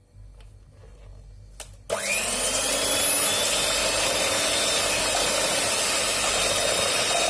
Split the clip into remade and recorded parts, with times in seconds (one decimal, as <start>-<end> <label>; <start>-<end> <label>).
0.0-7.3 recorded

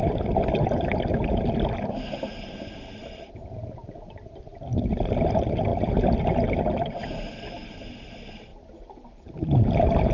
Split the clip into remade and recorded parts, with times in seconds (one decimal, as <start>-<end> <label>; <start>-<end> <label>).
0.0-10.1 recorded

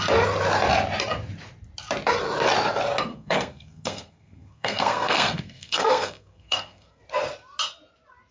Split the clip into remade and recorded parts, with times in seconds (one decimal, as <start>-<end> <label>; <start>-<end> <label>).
0.0-3.1 recorded; 3.1-7.0 remade; 7.0-8.3 recorded

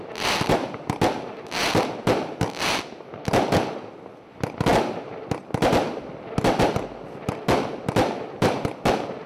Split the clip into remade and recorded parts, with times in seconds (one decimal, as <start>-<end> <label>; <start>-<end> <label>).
0.0-9.3 recorded

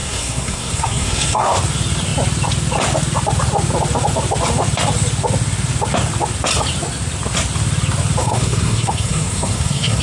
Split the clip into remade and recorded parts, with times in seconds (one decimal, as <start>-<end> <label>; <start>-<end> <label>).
0.0-1.6 remade; 1.6-8.2 recorded; 8.2-10.0 remade

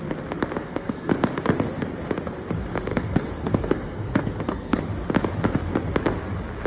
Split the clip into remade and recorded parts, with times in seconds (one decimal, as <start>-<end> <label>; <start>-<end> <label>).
0.0-0.6 recorded; 0.6-1.1 remade; 1.1-2.9 recorded; 2.9-4.8 remade; 4.8-6.7 recorded

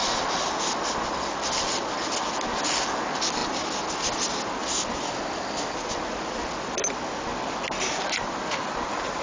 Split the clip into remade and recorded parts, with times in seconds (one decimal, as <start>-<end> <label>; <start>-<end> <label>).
0.0-9.2 recorded

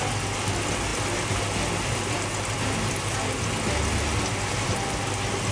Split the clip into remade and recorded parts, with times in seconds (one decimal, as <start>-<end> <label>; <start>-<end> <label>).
0.0-5.5 recorded